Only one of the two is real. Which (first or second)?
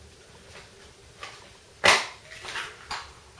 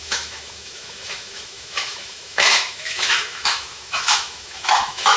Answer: first